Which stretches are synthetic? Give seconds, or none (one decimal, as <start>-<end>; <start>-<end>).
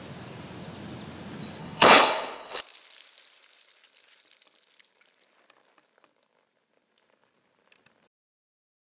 1.6-2.6